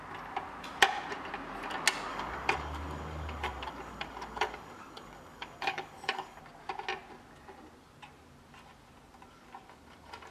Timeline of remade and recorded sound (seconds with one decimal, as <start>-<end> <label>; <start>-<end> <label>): 0.0-2.1 recorded; 2.1-6.4 remade; 6.4-10.3 recorded